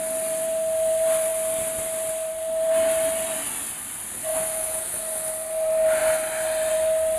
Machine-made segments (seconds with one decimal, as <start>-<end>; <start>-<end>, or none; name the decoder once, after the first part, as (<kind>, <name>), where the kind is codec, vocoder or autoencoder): 4.3-5.0 (autoencoder, DAC-VAE)